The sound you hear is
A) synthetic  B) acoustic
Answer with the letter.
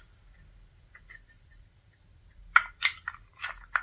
A